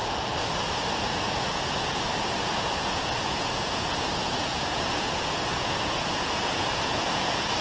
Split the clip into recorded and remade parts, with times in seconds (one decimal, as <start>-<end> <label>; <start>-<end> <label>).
0.0-1.1 recorded; 1.1-7.6 remade